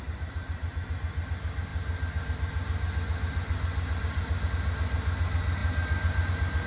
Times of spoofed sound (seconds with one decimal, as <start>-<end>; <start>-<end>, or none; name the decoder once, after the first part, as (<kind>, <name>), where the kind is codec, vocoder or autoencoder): none